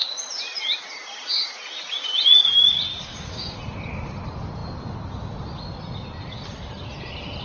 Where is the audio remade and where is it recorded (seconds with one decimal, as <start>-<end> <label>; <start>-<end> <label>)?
0.0-2.9 recorded; 2.9-3.6 remade; 3.6-7.4 recorded